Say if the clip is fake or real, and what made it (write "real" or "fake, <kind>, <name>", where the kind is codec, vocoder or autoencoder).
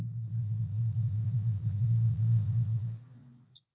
fake, vocoder, Vocos